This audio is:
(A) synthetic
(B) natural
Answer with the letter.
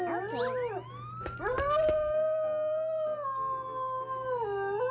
B